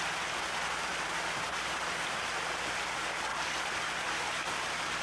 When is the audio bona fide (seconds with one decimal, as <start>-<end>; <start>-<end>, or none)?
0.0-0.9; 2.1-3.3; 3.9-5.0